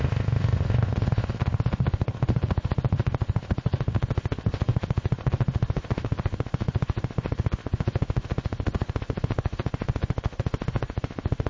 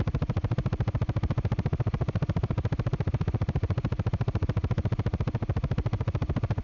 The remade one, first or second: first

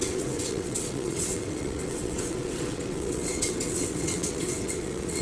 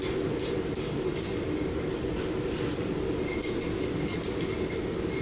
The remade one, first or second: first